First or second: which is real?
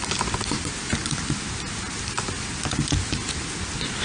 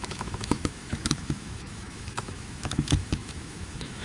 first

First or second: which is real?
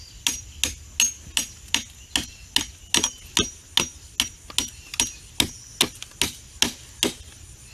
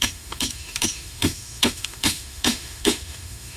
first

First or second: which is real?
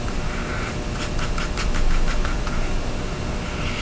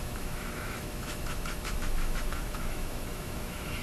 first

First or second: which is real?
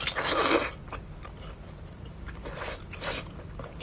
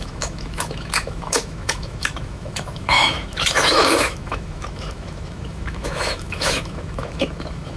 first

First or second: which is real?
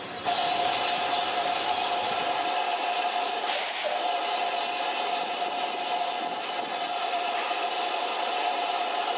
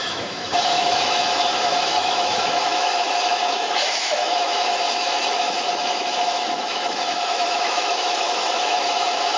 first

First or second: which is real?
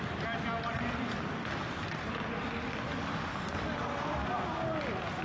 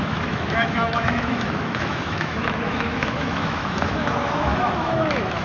first